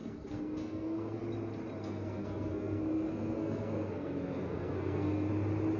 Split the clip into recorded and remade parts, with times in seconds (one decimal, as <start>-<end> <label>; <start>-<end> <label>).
0.0-1.2 remade; 1.2-1.8 recorded; 1.8-5.3 remade; 5.3-5.8 recorded